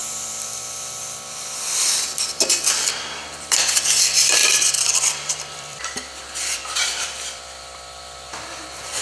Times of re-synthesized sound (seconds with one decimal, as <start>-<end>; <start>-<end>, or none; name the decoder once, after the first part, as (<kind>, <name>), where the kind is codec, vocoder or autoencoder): 4.4-8.3 (vocoder, BigVGAN v2)